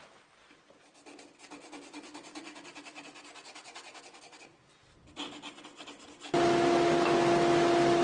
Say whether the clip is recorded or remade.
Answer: recorded